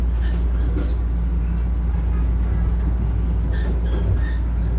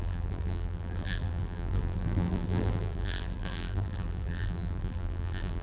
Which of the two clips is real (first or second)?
first